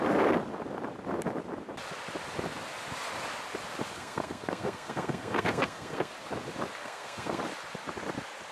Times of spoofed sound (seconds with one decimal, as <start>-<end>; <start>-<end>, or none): 3.9-6.1; 6.8-7.4

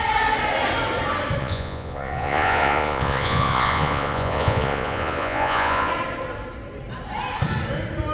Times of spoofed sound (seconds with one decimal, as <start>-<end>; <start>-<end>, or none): 1.4-5.9

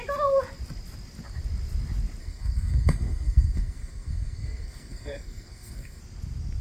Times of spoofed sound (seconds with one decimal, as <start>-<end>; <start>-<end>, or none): 2.2-6.0

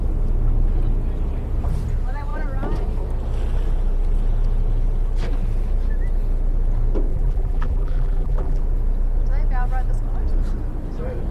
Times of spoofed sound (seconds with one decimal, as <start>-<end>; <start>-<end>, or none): 7.1-8.6

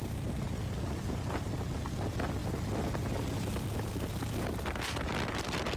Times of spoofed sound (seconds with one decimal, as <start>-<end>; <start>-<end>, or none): none

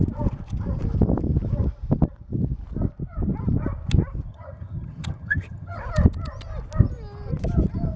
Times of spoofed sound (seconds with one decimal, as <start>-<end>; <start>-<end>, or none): 4.3-5.8

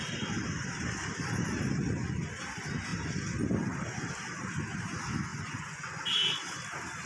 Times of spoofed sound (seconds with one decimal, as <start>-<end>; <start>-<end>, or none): 5.3-6.0